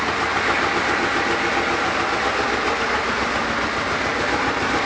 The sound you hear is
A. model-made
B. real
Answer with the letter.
B